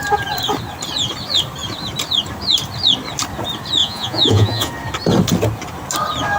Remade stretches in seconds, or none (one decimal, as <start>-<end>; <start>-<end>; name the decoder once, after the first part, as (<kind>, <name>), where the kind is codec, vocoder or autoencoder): 3.8-4.7 (vocoder, Vocos)